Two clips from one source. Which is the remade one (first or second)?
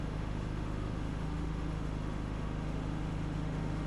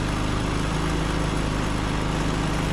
first